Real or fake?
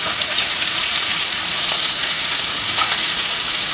fake